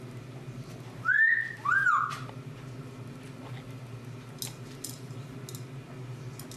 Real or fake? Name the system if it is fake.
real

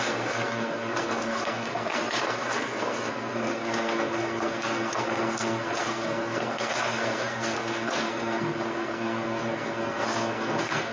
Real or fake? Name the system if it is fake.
fake, codec, SNAC